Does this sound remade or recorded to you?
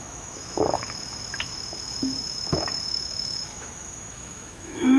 remade